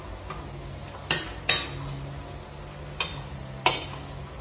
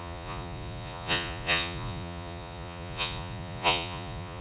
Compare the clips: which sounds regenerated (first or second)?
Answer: second